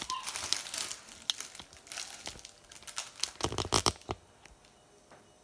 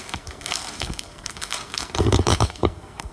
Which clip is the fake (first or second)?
second